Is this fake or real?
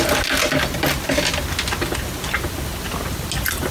real